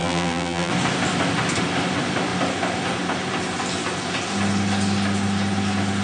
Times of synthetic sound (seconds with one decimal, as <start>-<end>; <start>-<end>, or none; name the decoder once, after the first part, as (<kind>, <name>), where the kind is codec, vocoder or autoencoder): 0.0-0.7 (vocoder, BigVGAN v2)